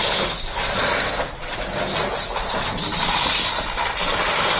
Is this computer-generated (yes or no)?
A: no